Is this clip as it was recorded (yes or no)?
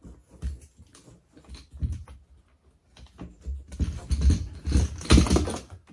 yes